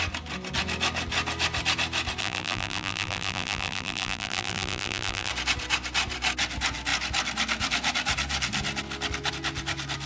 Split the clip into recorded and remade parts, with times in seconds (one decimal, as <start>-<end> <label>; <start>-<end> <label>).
0.0-2.2 recorded; 2.2-5.3 remade; 5.3-10.1 recorded